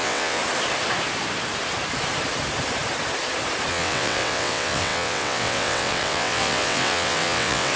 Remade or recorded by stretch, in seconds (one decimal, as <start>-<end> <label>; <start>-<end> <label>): 0.0-0.4 remade; 0.4-3.7 recorded; 3.7-7.8 remade